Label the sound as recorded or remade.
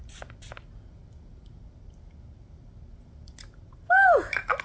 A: recorded